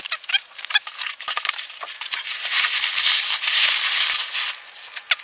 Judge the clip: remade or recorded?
remade